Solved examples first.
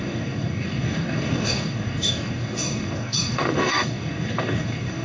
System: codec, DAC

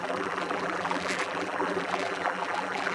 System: vocoder, BigVGAN v2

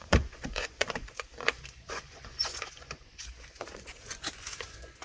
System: vocoder, Vocos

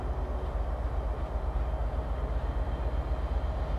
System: none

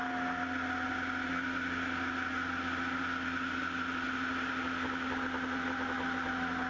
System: none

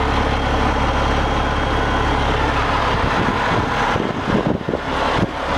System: none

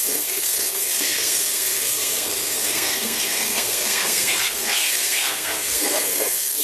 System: codec, SNAC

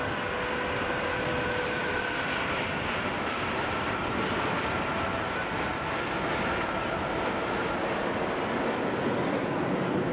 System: none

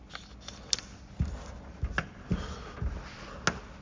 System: none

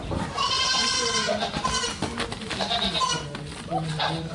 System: none